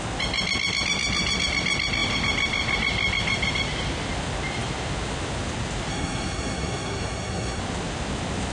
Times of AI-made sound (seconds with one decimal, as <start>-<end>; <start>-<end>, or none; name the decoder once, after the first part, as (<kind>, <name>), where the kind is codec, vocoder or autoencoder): 5.9-7.6 (codec, SNAC)